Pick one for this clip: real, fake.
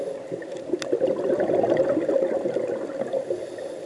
real